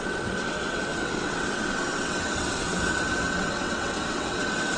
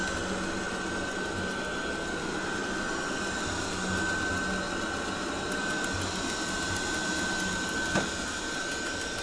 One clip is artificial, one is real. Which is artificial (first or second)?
first